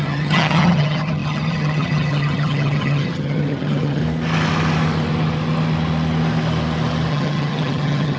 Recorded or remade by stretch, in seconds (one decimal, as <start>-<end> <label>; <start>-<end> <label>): 0.0-4.0 remade; 4.0-7.1 recorded; 7.1-8.2 remade